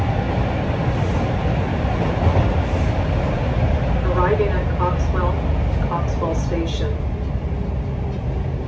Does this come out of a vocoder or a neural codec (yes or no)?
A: no